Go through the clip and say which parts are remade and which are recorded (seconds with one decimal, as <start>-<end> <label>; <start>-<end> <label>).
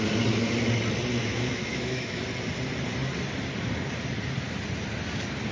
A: 0.0-1.2 recorded; 1.2-2.2 remade; 2.2-5.5 recorded